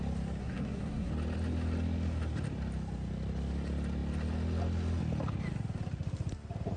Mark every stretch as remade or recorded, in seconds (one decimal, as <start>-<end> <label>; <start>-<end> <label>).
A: 0.0-0.4 recorded; 0.4-1.1 remade; 1.1-6.8 recorded